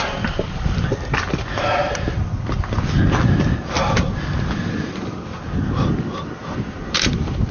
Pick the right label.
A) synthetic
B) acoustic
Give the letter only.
B